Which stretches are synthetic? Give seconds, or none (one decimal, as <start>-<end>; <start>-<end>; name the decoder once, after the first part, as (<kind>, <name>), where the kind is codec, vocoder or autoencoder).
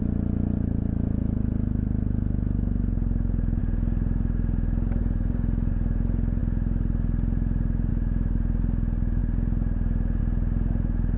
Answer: 5.0-5.7 (vocoder, BigVGAN v2)